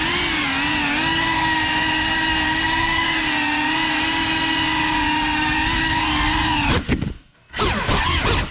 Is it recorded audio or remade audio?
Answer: recorded